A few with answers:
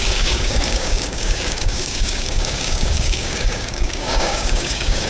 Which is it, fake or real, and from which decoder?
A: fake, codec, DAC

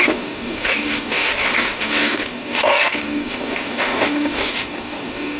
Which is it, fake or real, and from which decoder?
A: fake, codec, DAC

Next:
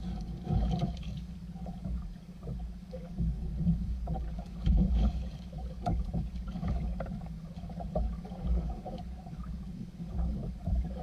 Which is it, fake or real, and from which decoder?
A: fake, codec, DAC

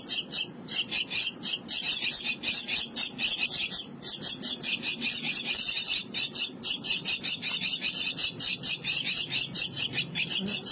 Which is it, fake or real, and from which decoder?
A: real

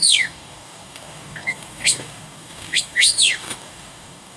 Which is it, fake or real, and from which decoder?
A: fake, codec, DAC